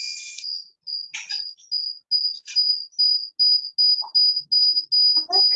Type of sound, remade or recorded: recorded